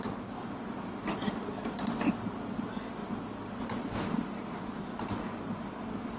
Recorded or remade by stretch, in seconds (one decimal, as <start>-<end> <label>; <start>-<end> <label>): 0.0-6.2 recorded

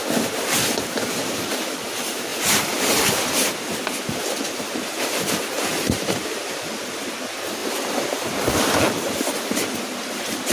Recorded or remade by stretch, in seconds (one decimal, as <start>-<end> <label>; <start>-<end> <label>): 0.0-2.3 recorded; 2.3-5.0 remade; 5.0-5.7 recorded; 5.7-6.6 remade; 6.6-7.6 recorded; 7.6-8.8 remade; 8.8-10.5 recorded

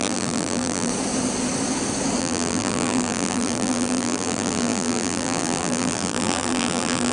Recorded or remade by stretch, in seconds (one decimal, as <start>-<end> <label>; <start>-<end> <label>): 0.0-0.9 remade; 0.9-2.2 recorded; 2.2-7.1 remade

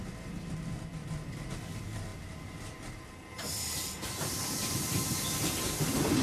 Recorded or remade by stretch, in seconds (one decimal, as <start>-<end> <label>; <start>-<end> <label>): 0.0-6.2 recorded

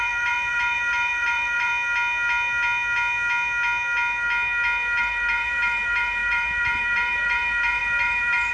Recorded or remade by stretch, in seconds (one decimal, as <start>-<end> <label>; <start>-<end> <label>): 0.0-1.7 remade; 1.7-5.0 recorded; 5.0-8.5 remade

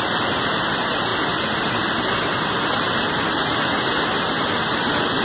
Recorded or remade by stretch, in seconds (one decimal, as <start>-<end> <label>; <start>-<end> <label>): 0.0-5.2 recorded

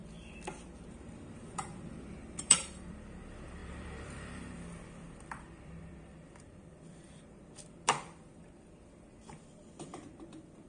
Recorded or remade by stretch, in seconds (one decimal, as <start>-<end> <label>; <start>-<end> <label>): 0.0-0.9 recorded; 0.9-10.7 remade